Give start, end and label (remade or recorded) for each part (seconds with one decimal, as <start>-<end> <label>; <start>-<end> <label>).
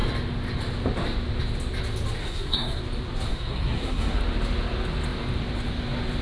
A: 0.0-2.2 recorded; 2.2-2.8 remade; 2.8-3.3 recorded; 3.3-4.2 remade; 4.2-6.2 recorded